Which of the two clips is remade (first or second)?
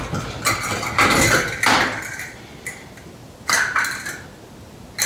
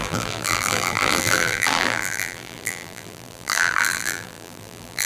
second